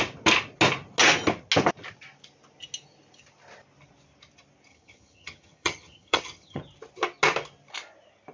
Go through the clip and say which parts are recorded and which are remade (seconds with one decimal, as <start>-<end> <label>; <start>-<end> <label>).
0.0-4.7 recorded; 4.7-6.6 remade; 6.6-8.3 recorded